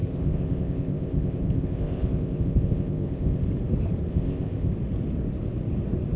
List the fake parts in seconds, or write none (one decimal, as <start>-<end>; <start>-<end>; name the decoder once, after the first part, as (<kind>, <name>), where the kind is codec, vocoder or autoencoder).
0.0-3.4 (codec, ZipCodec); 4.1-4.7